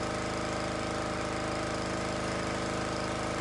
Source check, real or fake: real